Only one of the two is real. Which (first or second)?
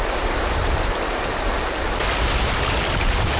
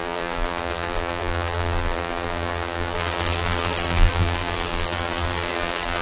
first